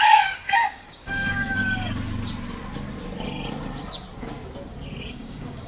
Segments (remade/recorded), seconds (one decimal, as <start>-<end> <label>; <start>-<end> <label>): 0.0-1.6 remade; 1.6-5.0 recorded; 5.0-5.7 remade